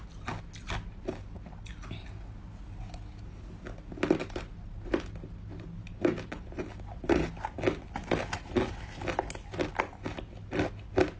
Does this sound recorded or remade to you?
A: recorded